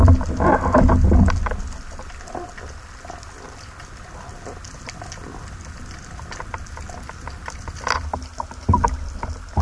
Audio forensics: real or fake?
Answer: real